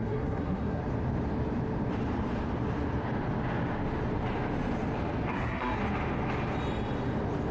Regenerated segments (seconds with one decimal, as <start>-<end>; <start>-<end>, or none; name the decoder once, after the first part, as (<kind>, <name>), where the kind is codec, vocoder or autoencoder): 0.0-0.8 (codec, SNAC); 5.3-5.8